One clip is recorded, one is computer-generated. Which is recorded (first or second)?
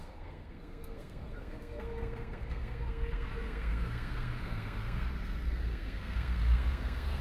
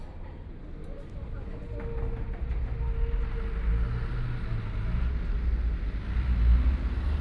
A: second